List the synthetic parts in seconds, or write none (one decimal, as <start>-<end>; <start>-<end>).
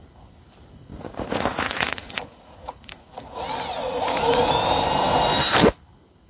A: 0.9-3.4; 3.8-4.5